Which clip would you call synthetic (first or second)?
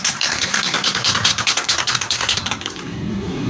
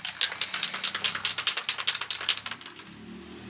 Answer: first